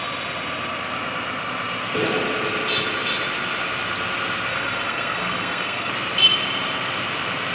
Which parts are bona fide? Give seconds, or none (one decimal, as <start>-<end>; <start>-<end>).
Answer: 0.0-4.5; 5.9-7.5